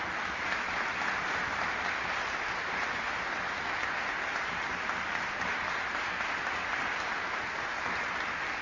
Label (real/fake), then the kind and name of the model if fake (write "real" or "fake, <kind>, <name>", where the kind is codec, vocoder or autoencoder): real